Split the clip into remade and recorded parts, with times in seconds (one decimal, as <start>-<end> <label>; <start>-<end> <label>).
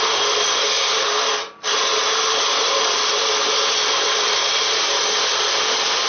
0.0-6.1 recorded